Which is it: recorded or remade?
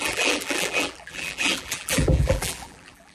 remade